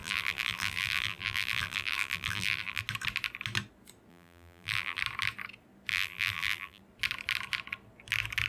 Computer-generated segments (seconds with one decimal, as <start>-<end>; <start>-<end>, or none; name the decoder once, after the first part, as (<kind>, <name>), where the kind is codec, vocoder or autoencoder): 0.0-2.8 (vocoder, BigVGAN v2); 4.1-5.0; 5.9-6.8

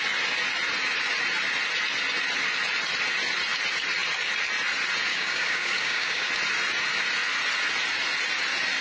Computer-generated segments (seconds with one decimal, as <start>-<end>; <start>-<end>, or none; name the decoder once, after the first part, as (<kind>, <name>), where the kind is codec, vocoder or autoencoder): 5.1-6.3 (codec, DAC)